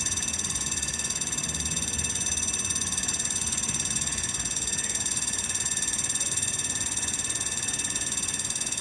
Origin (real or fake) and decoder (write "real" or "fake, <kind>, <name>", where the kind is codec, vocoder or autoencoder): fake, vocoder, Vocos